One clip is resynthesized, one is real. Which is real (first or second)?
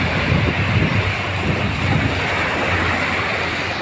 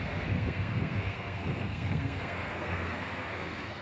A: first